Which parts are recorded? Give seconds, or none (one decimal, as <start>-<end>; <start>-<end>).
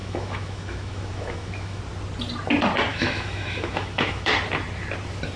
1.8-2.9; 4.3-5.4